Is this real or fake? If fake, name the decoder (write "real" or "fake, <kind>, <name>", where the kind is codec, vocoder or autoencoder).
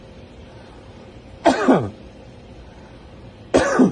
real